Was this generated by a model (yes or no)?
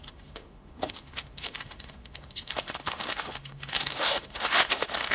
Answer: yes